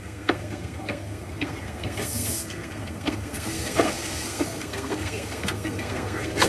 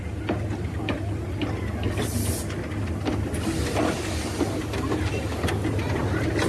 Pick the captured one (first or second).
second